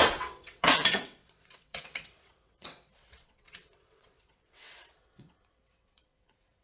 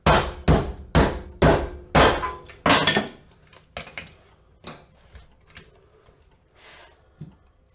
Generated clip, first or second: first